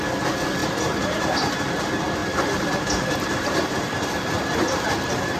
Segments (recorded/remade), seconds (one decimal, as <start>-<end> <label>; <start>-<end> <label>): 0.0-0.6 recorded; 0.6-1.5 remade; 1.5-2.2 recorded; 2.2-5.4 remade